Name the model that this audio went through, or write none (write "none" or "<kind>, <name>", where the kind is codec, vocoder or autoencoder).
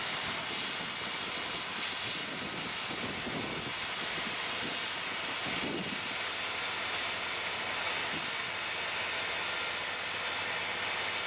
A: none